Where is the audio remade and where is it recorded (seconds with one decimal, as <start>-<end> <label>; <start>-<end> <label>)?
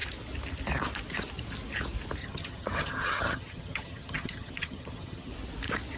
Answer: 0.0-2.2 recorded; 2.2-5.3 remade; 5.3-6.0 recorded